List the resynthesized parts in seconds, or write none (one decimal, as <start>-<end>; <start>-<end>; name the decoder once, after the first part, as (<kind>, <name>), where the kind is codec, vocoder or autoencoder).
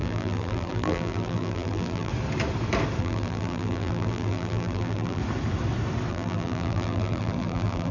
0.0-2.1 (vocoder, BigVGAN v2); 3.0-5.2; 6.1-7.9